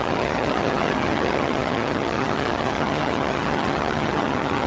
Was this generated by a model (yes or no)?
yes